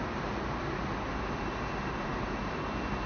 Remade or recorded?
recorded